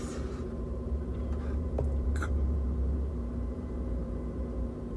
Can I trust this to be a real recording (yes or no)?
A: no